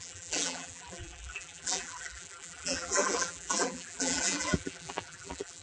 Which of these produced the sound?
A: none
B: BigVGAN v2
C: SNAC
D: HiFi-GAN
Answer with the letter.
B